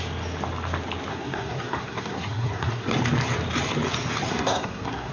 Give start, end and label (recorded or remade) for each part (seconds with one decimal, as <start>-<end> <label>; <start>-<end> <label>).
0.0-1.1 recorded; 1.1-3.0 remade; 3.0-4.3 recorded; 4.3-5.1 remade